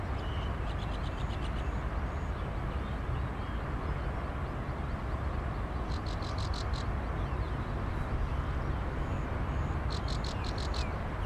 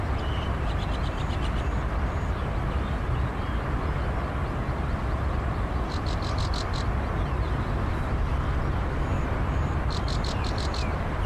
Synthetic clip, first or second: second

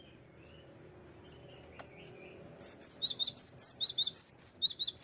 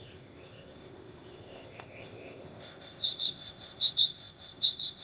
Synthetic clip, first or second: second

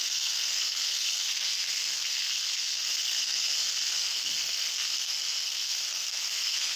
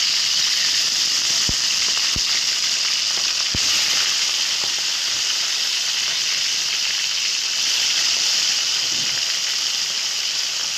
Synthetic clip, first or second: first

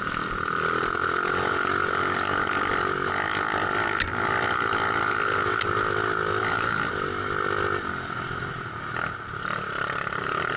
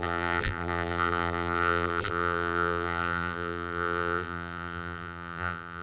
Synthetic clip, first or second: second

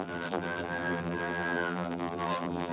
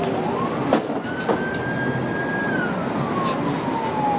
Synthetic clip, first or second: first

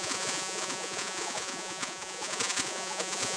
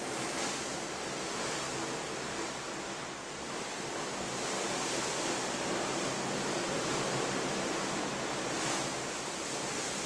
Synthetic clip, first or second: first